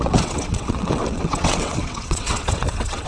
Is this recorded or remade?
remade